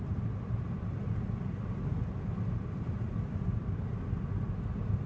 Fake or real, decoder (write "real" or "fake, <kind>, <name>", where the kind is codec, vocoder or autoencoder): real